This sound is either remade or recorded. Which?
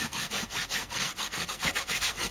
remade